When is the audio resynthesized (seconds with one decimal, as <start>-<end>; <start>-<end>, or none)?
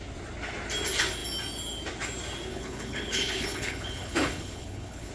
2.5-5.1